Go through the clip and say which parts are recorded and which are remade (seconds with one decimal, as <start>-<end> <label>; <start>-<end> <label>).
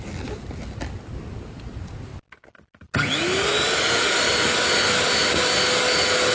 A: 0.0-6.3 recorded